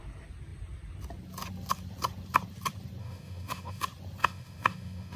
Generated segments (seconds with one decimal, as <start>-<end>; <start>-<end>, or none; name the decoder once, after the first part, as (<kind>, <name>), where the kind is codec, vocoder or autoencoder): 3.0-3.8 (autoencoder, DAC-VAE); 4.2-5.2